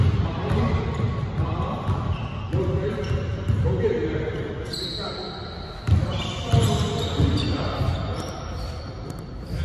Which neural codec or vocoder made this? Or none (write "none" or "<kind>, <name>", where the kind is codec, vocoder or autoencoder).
none